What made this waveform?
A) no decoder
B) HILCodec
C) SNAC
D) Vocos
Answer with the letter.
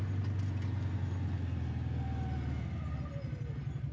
A